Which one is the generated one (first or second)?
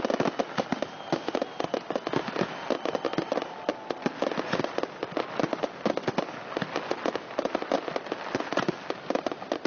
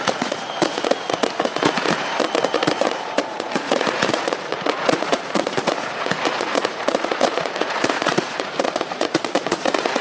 second